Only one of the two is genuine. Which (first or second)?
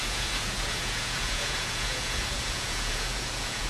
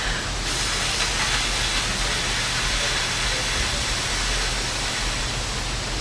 second